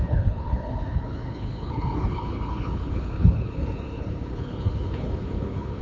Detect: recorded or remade remade